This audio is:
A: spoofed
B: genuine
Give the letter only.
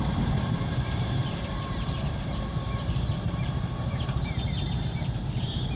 A